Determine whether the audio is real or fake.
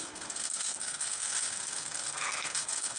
fake